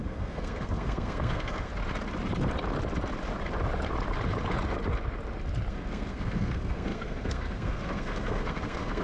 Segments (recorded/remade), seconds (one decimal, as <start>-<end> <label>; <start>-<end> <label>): 0.0-1.7 remade; 1.7-5.7 recorded; 5.7-9.0 remade